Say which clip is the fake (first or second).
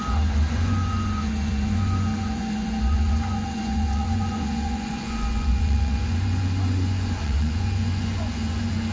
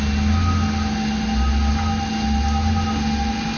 first